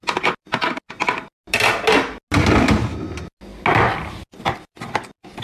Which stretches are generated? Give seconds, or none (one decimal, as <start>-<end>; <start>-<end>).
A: none